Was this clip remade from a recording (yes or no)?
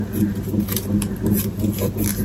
no